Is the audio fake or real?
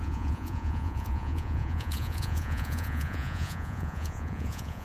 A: fake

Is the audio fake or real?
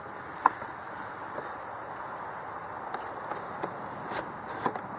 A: real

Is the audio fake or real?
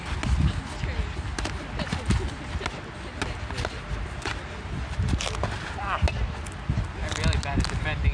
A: real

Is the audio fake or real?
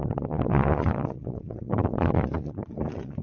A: fake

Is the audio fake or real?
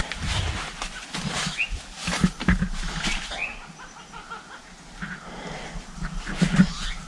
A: real